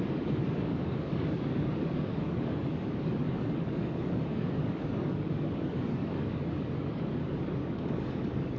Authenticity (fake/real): fake